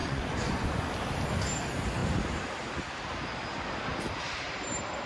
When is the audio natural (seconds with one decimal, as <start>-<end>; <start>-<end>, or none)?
0.9-5.1